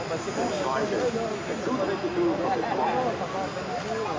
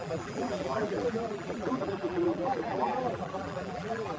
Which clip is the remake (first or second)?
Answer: second